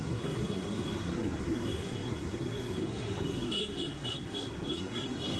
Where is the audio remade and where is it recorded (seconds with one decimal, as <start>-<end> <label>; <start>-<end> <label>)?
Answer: 0.0-5.4 remade